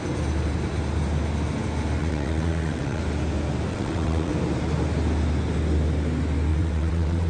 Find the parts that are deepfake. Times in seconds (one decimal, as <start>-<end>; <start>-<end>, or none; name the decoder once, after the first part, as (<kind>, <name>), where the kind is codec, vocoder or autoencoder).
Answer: 2.0-3.0 (vocoder, WaveNeXt); 3.7-4.3; 6.5-7.3